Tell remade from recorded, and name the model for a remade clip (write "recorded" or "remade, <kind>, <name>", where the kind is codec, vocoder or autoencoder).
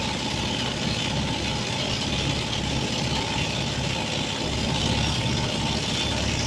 recorded